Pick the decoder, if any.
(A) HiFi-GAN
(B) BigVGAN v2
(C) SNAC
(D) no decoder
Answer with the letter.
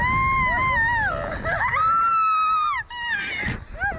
D